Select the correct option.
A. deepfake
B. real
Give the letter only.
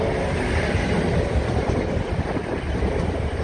A